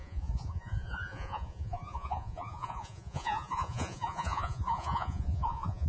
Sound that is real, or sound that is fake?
fake